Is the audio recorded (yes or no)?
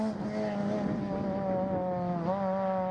yes